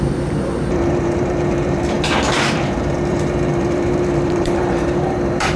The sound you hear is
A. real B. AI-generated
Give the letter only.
B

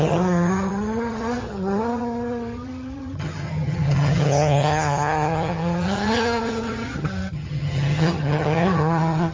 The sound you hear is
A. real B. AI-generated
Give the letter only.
B